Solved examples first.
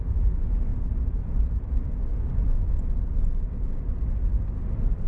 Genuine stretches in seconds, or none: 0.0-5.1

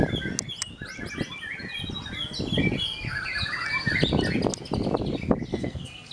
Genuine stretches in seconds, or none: 0.0-5.5

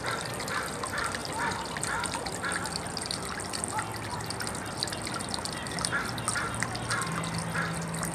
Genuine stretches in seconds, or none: 0.0-8.1